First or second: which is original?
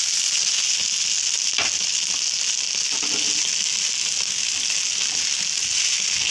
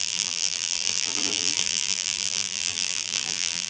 first